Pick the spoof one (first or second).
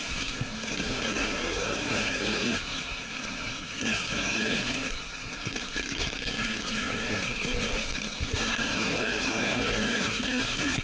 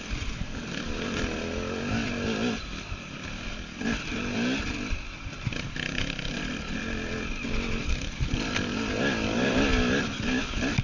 first